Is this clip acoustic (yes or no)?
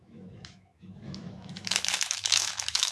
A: no